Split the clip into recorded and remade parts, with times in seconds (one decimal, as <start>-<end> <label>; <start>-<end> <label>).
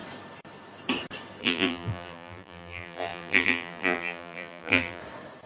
0.0-1.4 recorded; 1.4-5.0 remade; 5.0-5.5 recorded